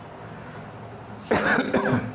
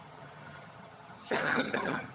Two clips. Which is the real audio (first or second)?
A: first